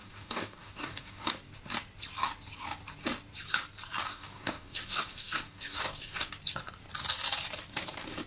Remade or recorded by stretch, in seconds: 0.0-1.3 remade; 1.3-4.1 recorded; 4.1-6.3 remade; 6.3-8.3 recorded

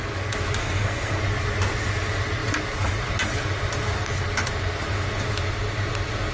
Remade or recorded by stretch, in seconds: 0.0-0.6 recorded; 0.6-1.2 remade; 1.2-6.3 recorded

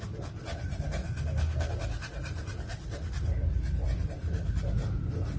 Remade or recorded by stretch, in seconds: 0.0-1.0 recorded; 1.0-1.7 remade; 1.7-5.4 recorded

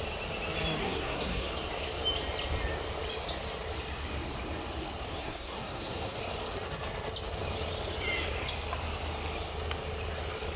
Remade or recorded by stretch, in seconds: 0.0-0.8 recorded; 0.8-1.5 remade; 1.5-5.1 recorded; 5.1-6.2 remade; 6.2-10.6 recorded

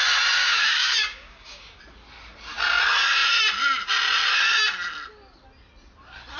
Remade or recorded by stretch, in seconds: 0.0-0.4 recorded; 0.4-1.8 remade; 1.8-6.4 recorded

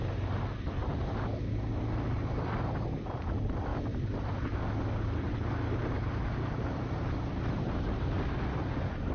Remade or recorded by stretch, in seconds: 0.0-9.1 recorded

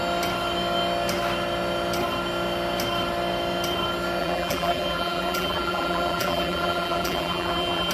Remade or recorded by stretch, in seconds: 0.0-4.2 recorded; 4.2-7.9 remade

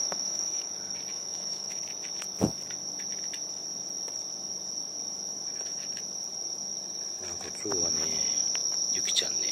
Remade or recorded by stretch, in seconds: 0.0-0.7 remade; 0.7-1.1 recorded; 1.1-1.8 remade; 1.8-9.5 recorded